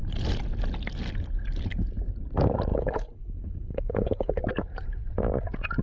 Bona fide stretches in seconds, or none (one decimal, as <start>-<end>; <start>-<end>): 0.0-2.7; 4.4-5.8